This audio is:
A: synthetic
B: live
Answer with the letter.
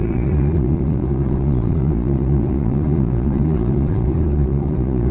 A